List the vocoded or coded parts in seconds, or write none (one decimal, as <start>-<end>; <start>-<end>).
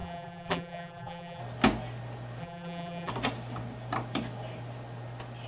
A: 0.0-1.4; 2.4-3.1